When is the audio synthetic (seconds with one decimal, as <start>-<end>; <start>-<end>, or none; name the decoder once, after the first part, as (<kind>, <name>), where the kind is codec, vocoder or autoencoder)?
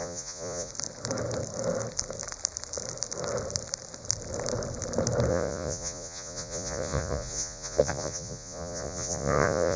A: 0.0-0.7 (vocoder, Vocos); 5.3-9.8